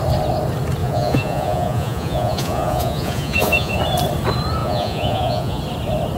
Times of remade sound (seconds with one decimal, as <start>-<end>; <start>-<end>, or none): 0.8-3.8; 4.6-5.6